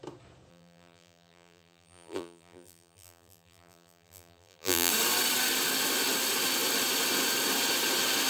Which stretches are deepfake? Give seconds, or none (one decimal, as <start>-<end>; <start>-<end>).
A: 0.5-4.9